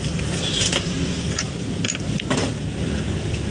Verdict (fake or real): real